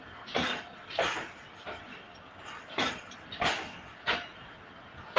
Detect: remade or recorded recorded